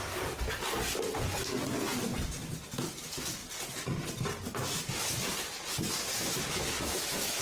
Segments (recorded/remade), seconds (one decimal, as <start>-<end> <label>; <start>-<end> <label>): 0.0-6.1 recorded; 6.1-7.4 remade